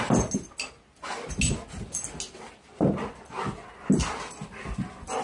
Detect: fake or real real